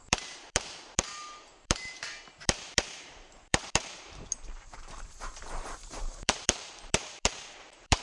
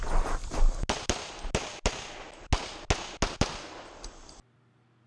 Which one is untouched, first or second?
second